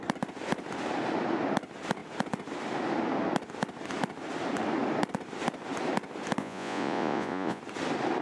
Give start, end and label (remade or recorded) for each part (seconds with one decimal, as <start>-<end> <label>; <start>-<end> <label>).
0.0-6.4 recorded; 6.4-7.6 remade; 7.6-8.2 recorded